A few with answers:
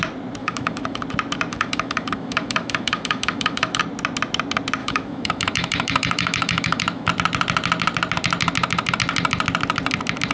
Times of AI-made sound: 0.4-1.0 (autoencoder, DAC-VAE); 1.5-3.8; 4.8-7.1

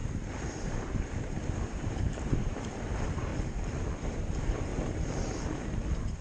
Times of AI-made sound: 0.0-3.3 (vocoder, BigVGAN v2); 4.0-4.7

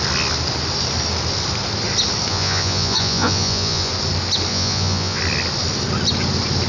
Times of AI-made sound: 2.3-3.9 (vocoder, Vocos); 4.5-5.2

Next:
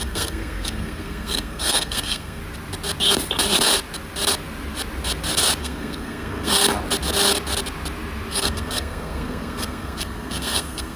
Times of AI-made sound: 0.0-2.4 (codec, SNAC); 5.6-6.6; 8.3-11.0

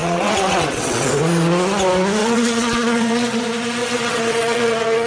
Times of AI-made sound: 0.0-1.1 (vocoder, WaveNeXt); 2.2-3.4; 3.8-5.1

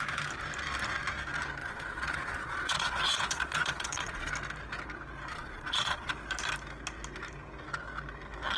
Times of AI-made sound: 1.6-4.3 (vocoder, Vocos); 5.3-6.1

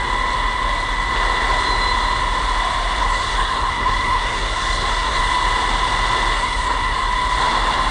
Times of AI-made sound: 3.0-5.2 (codec, SNAC); 6.3-7.1

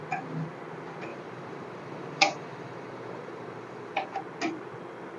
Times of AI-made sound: 1.1-4.2 (vocoder, BigVGAN v2)